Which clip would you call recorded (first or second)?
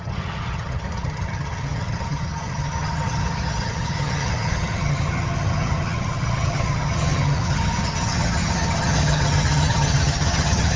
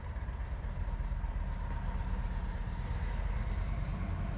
second